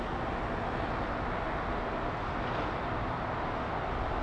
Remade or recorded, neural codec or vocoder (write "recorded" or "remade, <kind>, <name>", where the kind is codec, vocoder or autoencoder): recorded